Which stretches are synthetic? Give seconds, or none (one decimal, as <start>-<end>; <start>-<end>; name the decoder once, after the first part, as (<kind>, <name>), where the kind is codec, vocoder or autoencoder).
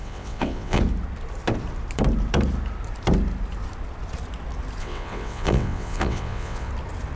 0.0-0.8 (vocoder, WaveNeXt); 4.8-6.7